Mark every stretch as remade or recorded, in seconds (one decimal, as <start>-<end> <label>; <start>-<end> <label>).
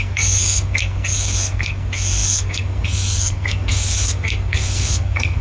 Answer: 0.0-5.4 remade